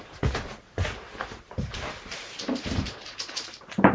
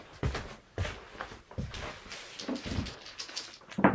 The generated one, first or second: first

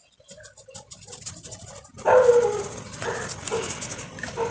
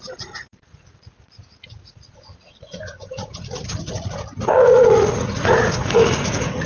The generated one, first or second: second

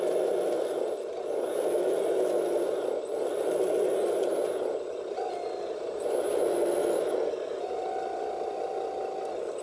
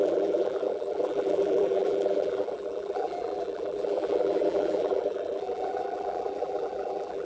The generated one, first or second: second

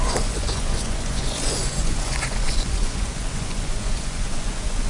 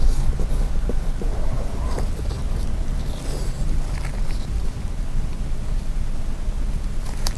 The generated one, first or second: first